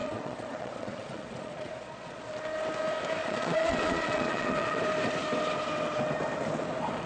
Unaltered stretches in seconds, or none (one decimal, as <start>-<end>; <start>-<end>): 2.2-3.2; 4.8-7.1